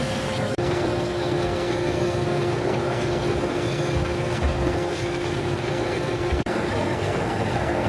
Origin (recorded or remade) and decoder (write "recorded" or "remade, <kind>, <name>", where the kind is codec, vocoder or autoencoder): remade, codec, SNAC